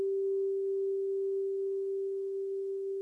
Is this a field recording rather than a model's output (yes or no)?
yes